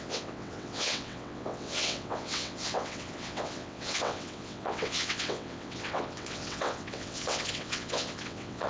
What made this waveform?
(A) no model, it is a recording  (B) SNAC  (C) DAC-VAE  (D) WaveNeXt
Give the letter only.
D